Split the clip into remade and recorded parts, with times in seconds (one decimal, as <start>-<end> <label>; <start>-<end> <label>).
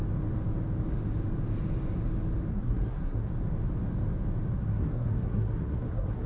0.0-2.5 recorded; 2.5-3.3 remade; 3.3-4.7 recorded; 4.7-6.3 remade